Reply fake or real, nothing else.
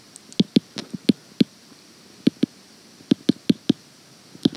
real